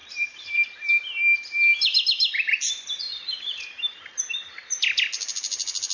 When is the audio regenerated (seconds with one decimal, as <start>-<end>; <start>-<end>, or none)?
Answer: 0.0-0.9; 1.7-4.0